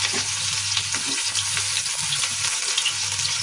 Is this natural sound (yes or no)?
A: yes